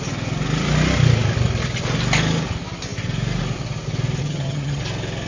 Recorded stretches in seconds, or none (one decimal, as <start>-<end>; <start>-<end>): 0.0-4.2; 4.8-5.3